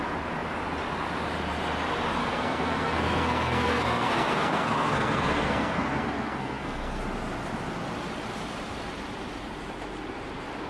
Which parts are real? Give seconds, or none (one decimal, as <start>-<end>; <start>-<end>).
0.0-2.2; 7.0-10.7